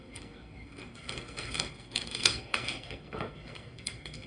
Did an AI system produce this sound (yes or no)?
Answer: yes